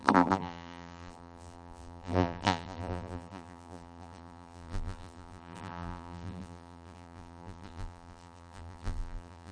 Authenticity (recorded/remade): remade